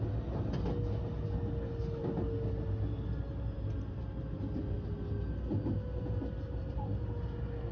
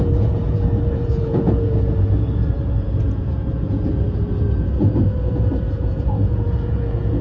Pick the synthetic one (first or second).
second